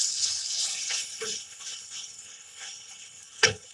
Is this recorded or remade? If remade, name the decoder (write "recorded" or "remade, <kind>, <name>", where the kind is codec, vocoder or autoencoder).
remade, codec, HILCodec